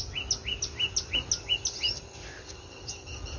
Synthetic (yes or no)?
no